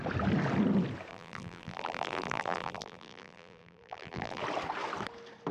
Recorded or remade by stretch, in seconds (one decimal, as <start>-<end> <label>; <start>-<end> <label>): 0.0-1.1 recorded; 1.1-4.4 remade; 4.4-5.5 recorded